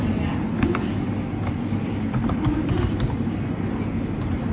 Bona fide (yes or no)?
yes